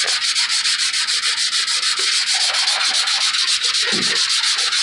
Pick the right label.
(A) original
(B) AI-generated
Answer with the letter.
A